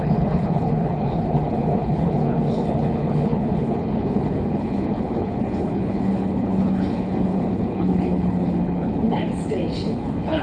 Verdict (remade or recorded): remade